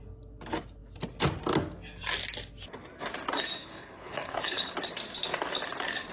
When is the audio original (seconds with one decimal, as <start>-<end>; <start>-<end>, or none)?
0.0-3.6; 4.7-6.1